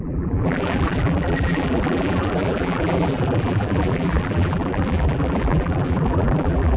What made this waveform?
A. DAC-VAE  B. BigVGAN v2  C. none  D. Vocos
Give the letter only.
B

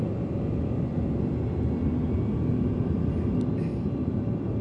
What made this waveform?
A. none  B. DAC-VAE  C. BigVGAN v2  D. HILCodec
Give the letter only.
A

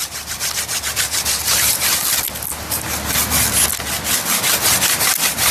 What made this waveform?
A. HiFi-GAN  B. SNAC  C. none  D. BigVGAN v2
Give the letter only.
C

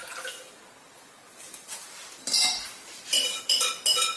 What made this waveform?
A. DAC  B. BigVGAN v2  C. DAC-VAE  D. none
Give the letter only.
D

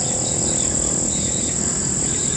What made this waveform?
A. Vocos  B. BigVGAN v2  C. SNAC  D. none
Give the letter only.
D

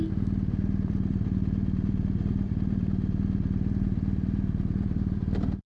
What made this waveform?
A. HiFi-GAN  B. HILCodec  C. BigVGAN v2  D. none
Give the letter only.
C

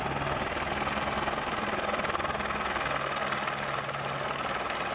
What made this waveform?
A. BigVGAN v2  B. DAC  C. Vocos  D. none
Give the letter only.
D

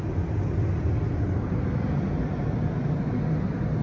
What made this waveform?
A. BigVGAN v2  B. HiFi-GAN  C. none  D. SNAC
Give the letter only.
C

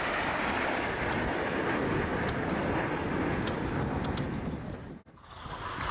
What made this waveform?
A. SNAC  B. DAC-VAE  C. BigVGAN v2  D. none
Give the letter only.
D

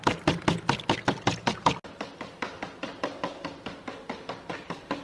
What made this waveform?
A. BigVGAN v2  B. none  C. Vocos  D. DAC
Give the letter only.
B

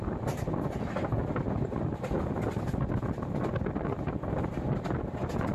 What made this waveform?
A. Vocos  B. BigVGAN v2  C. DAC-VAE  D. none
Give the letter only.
D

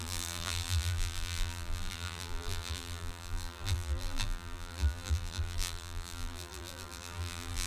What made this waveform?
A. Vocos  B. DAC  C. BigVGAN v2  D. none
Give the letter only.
C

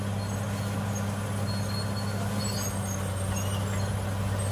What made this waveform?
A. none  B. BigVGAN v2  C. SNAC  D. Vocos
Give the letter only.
A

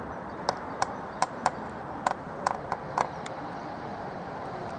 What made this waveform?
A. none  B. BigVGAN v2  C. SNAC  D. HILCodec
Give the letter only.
B